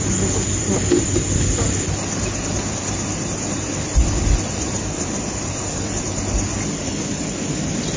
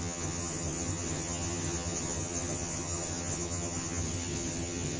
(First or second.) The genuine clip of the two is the first